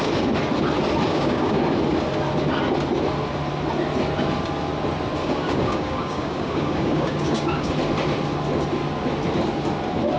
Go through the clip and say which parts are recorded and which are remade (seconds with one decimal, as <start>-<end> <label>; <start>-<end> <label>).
0.0-1.1 recorded; 1.1-1.6 remade; 1.6-5.2 recorded; 5.2-7.7 remade; 7.7-10.2 recorded